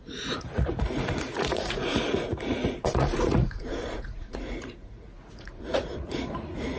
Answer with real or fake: fake